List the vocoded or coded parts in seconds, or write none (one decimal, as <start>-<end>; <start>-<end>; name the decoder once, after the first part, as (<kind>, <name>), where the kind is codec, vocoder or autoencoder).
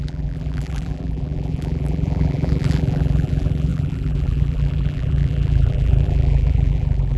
0.0-7.2 (vocoder, BigVGAN v2)